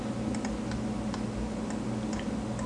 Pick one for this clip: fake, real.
real